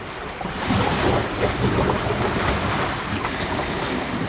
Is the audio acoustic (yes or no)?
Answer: yes